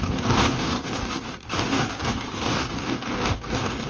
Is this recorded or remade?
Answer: remade